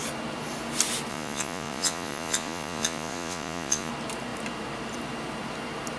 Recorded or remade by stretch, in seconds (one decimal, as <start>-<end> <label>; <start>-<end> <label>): 0.0-1.1 recorded; 1.1-3.9 remade; 3.9-6.0 recorded